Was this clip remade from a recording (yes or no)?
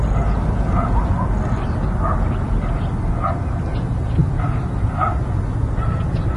no